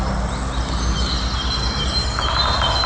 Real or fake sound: real